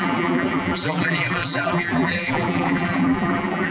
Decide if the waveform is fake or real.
fake